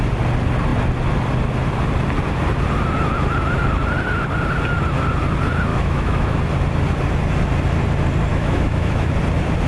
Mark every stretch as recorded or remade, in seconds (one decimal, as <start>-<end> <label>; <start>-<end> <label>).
0.0-5.7 recorded; 5.7-6.4 remade; 6.4-8.3 recorded; 8.3-9.1 remade; 9.1-9.7 recorded